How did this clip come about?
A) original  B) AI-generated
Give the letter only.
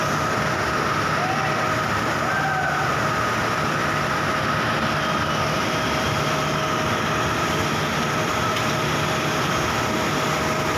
A